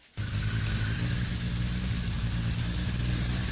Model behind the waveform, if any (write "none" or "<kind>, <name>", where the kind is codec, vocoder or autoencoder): none